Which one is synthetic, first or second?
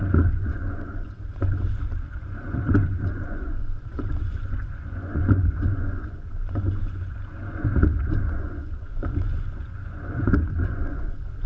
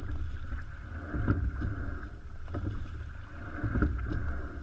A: first